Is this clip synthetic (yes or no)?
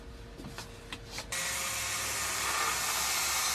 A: no